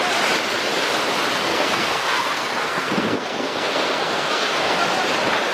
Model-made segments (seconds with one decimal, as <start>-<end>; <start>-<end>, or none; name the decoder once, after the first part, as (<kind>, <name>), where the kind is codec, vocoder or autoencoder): 1.5-4.8 (codec, SNAC)